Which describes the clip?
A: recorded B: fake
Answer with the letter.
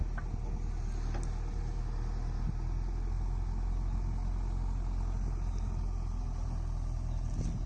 A